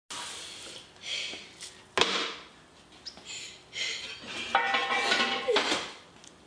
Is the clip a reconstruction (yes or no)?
no